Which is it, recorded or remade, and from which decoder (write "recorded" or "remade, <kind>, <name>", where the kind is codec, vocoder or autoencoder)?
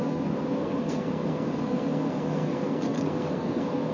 remade, codec, SNAC